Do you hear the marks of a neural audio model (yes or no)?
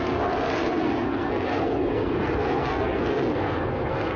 yes